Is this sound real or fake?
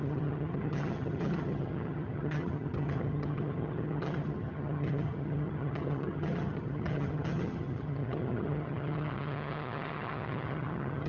fake